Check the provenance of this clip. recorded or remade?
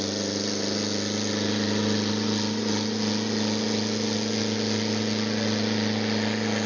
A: recorded